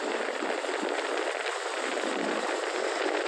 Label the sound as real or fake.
real